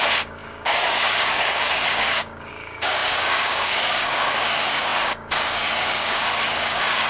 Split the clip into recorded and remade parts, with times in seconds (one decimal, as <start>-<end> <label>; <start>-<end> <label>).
0.0-7.1 remade